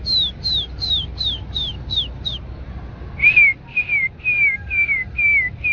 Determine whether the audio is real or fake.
real